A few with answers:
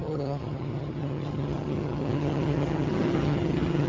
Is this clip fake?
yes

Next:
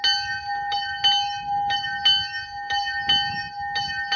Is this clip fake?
no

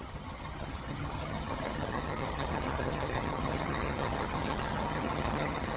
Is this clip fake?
yes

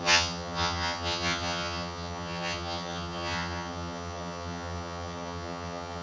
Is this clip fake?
yes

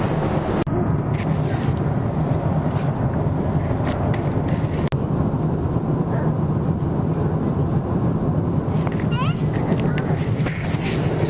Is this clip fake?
no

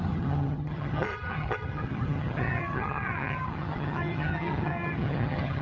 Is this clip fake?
yes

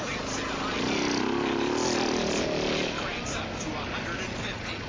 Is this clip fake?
no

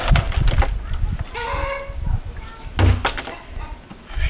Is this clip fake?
no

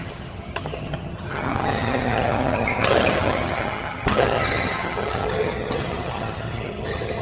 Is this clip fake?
yes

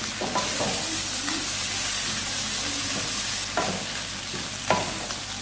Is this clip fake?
no